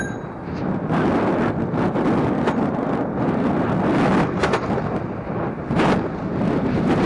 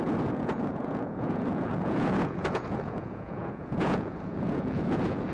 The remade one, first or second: second